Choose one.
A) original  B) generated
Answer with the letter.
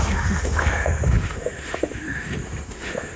B